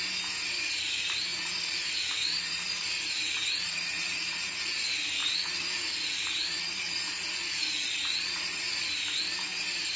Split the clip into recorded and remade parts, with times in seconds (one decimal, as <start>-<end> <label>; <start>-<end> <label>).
0.0-1.3 recorded; 1.3-4.7 remade; 4.7-5.2 recorded; 5.2-8.8 remade; 8.8-10.0 recorded